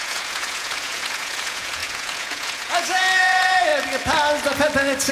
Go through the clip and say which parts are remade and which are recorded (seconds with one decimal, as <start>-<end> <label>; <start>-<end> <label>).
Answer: 0.0-3.7 remade; 3.7-5.1 recorded